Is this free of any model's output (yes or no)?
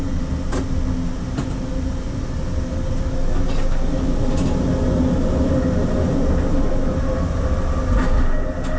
yes